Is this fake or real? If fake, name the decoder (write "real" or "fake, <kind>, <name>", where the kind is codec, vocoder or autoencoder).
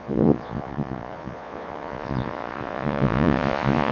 fake, vocoder, Vocos